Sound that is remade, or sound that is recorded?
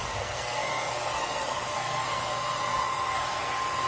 remade